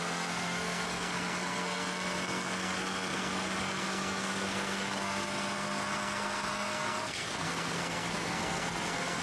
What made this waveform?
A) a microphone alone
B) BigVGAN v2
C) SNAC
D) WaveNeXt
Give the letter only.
C